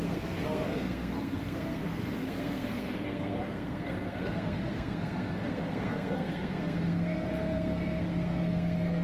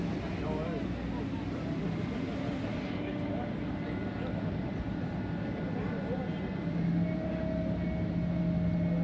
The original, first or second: second